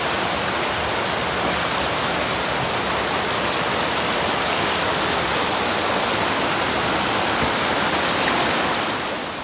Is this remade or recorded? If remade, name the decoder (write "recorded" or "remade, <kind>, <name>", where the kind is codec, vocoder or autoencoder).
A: recorded